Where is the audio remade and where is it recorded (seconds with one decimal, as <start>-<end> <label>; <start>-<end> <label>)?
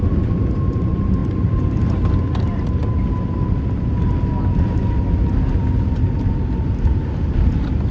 0.0-7.9 recorded